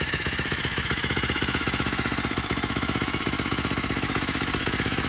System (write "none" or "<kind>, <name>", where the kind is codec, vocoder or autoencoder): autoencoder, DAC-VAE